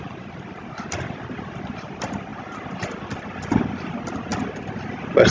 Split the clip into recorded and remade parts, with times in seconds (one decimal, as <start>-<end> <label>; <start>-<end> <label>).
0.0-2.3 remade; 2.3-3.6 recorded; 3.6-4.3 remade; 4.3-5.3 recorded